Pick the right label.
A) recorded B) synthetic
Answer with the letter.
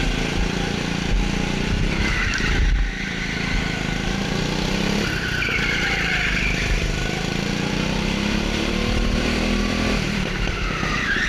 B